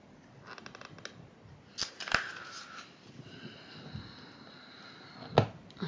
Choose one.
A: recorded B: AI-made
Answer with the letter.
A